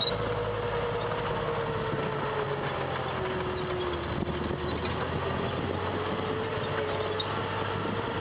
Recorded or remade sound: recorded